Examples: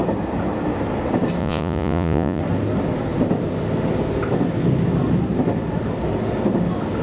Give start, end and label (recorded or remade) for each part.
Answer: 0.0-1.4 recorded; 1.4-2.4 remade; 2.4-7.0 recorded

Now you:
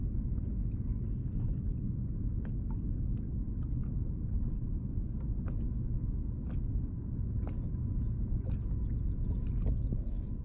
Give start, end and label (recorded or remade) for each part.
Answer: 0.0-10.4 recorded

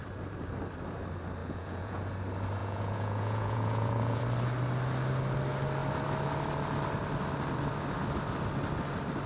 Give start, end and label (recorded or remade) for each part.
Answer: 0.0-1.4 recorded; 1.4-2.0 remade; 2.0-2.6 recorded; 2.6-4.2 remade; 4.2-9.3 recorded

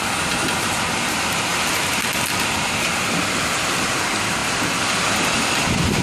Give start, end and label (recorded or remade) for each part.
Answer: 0.0-1.5 recorded; 1.5-2.9 remade; 2.9-4.4 recorded; 4.4-5.4 remade; 5.4-6.0 recorded

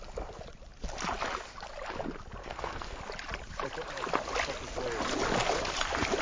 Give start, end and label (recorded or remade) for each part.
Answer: 0.0-2.4 recorded; 2.4-3.0 remade; 3.0-6.2 recorded

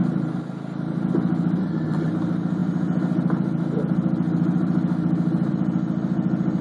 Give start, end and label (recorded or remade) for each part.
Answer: 0.0-1.6 recorded; 1.6-2.1 remade; 2.1-6.6 recorded